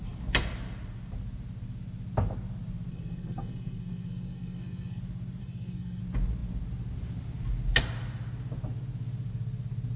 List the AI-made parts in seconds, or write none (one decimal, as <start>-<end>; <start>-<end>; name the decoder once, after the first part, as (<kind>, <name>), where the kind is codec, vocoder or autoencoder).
2.9-5.0 (codec, SNAC); 5.4-6.0